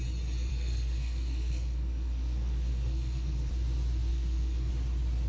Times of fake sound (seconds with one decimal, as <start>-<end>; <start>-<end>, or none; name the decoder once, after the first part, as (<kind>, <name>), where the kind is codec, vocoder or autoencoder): 0.5-3.5 (codec, SNAC); 4.1-4.7